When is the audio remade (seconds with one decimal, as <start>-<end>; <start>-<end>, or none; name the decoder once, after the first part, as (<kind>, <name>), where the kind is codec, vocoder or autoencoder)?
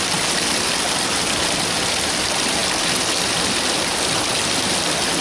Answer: none